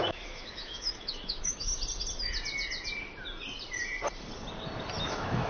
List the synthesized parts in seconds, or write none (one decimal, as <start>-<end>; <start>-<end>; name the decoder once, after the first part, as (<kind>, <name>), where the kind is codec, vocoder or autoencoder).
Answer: 0.0-1.7 (autoencoder, DAC-VAE); 5.0-5.5